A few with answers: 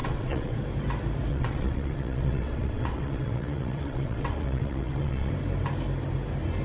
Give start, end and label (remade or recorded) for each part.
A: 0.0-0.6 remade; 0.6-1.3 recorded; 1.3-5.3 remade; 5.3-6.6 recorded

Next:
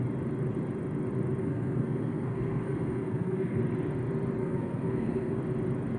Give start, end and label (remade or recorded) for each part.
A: 0.0-1.4 recorded; 1.4-3.6 remade; 3.6-4.4 recorded; 4.4-5.4 remade; 5.4-6.0 recorded

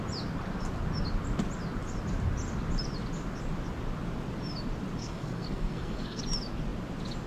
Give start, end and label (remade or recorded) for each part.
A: 0.0-5.0 recorded; 5.0-6.2 remade; 6.2-7.3 recorded

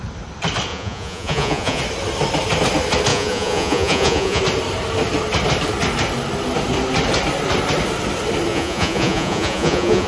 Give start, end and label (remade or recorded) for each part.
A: 0.0-0.7 recorded; 0.7-1.8 remade; 1.8-3.1 recorded; 3.1-4.4 remade; 4.4-8.5 recorded; 8.5-10.1 remade

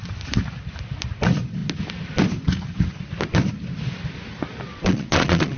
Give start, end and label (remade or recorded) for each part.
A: 0.0-4.7 recorded; 4.7-5.6 remade